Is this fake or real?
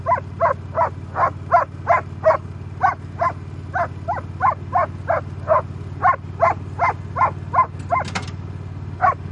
real